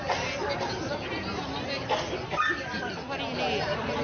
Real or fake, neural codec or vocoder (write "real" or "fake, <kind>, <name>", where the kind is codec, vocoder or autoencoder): real